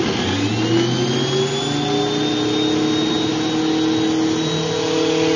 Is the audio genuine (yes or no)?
yes